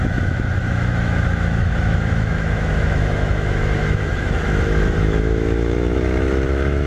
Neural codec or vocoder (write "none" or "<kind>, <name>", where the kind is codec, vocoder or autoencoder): autoencoder, DAC-VAE